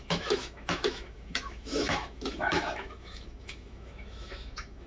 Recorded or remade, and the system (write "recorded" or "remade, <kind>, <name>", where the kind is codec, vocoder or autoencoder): remade, autoencoder, DAC-VAE